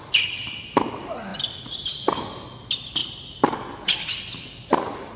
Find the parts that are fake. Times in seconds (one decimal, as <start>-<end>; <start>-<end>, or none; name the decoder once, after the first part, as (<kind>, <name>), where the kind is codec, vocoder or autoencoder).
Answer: 1.3-2.2 (vocoder, BigVGAN v2); 3.0-4.8